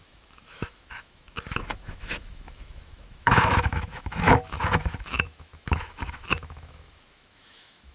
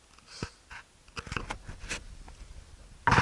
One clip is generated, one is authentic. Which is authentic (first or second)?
second